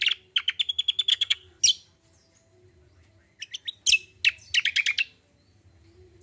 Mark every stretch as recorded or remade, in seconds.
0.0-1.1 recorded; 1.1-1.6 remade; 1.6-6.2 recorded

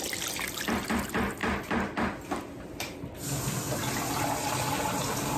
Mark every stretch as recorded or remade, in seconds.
0.0-5.4 recorded

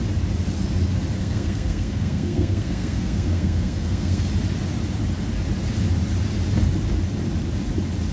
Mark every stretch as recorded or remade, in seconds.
0.0-1.2 recorded; 1.2-4.3 remade; 4.3-8.1 recorded

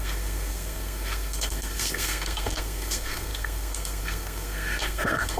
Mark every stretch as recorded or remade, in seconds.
0.0-5.4 remade